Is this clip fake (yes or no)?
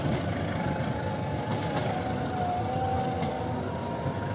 no